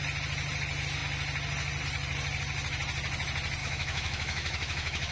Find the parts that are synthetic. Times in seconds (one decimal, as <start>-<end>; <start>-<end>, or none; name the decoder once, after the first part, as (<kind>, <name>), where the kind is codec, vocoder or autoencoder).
3.6-5.1 (autoencoder, DAC-VAE)